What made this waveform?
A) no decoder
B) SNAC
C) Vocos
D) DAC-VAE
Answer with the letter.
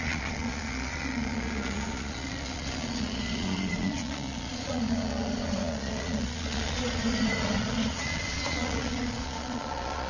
C